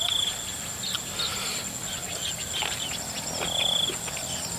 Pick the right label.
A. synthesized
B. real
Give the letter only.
B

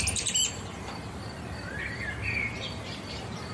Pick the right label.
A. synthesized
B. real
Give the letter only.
A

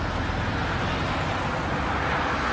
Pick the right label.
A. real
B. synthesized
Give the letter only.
A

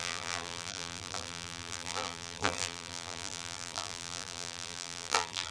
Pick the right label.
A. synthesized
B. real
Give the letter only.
A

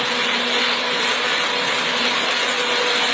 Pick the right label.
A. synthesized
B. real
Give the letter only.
B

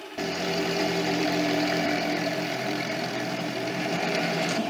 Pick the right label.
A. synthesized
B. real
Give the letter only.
A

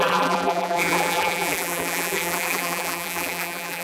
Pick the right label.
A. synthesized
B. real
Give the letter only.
A